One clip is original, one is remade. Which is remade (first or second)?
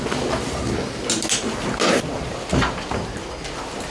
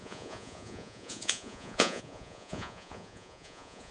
second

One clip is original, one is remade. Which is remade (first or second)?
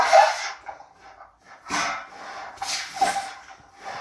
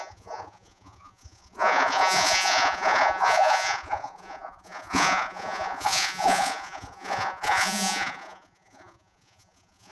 second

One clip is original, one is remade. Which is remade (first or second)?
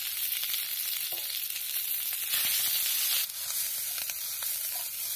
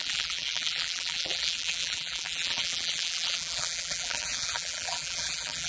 second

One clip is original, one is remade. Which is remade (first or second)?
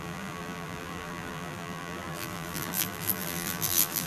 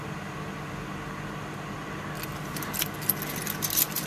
first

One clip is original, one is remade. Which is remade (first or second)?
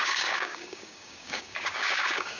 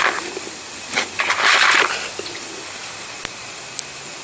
first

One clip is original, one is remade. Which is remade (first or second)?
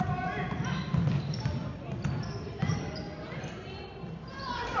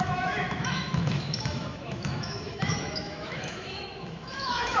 second